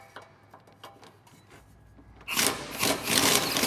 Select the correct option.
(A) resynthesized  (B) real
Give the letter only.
B